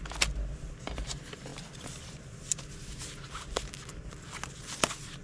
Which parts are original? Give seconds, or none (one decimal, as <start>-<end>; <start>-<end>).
0.0-5.2

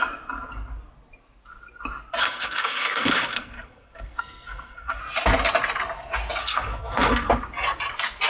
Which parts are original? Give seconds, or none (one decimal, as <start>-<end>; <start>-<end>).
0.0-2.2; 5.0-6.4; 7.3-8.3

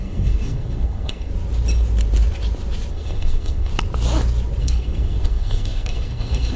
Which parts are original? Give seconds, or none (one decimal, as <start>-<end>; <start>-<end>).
1.3-2.9; 3.7-4.6

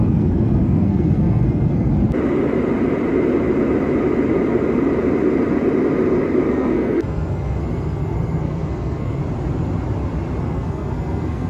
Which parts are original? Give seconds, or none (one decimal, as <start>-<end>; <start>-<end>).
1.9-6.5; 9.2-10.4

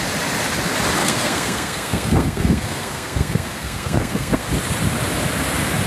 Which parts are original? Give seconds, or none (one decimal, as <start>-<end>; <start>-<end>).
0.0-1.0; 4.5-5.9

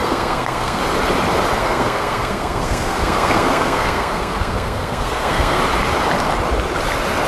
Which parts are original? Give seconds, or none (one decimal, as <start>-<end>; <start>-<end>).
0.8-1.6; 5.6-7.3

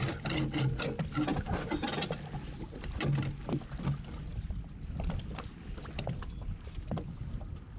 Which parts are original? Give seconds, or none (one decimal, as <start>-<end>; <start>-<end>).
0.0-7.8

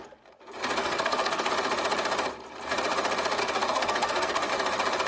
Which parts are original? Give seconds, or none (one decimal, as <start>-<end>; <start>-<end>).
0.0-0.8; 1.5-3.4; 4.5-5.1